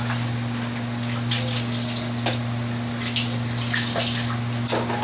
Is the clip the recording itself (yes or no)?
yes